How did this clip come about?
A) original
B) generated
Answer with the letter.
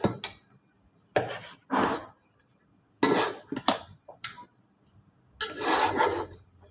A